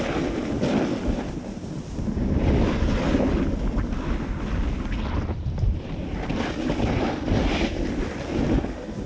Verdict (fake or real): real